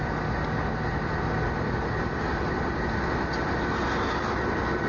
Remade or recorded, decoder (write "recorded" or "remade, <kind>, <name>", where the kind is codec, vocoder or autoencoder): recorded